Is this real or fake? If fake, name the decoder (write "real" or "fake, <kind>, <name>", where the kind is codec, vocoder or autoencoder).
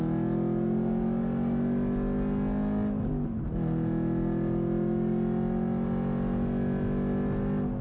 real